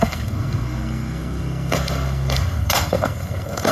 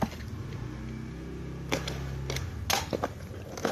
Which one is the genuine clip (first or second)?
second